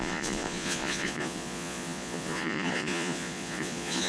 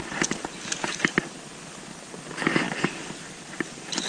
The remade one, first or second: first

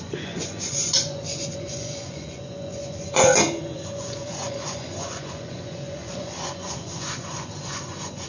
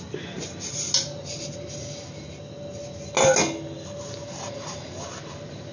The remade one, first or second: first